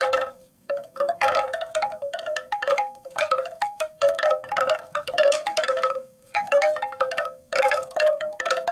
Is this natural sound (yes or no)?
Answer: no